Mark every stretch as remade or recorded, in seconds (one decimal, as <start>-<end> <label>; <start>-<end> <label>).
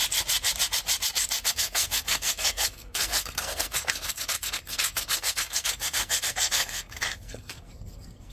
0.0-1.5 recorded; 1.5-8.3 remade